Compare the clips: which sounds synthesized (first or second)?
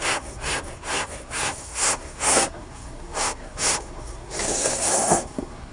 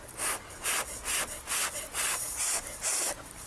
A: first